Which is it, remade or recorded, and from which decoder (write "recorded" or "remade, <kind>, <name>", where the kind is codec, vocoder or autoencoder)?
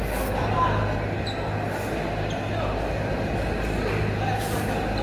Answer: recorded